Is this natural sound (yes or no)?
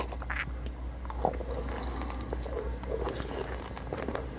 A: yes